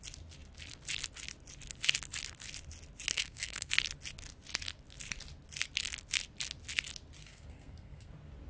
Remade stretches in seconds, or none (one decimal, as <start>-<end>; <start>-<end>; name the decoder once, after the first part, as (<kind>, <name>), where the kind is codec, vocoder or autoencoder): 3.1-3.7 (codec, SNAC); 7.2-8.1